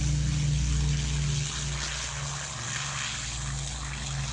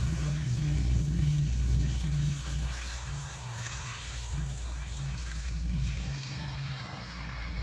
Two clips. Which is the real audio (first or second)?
first